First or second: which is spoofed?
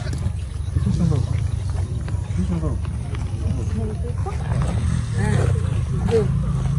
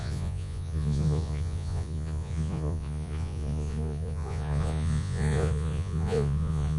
second